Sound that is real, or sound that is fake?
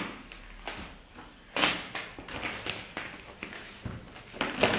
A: real